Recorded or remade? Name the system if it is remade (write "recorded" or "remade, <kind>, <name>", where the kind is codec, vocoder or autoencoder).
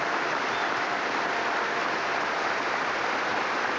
recorded